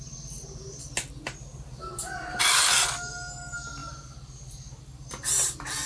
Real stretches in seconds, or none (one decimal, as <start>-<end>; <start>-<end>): 0.0-5.9